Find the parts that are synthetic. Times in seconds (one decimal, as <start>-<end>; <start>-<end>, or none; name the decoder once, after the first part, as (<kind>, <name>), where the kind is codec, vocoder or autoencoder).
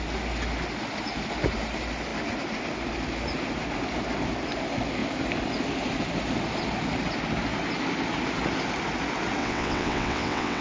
9.4-10.6 (vocoder, WaveNeXt)